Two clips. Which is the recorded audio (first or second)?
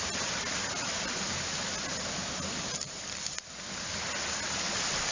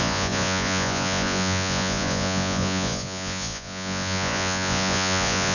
first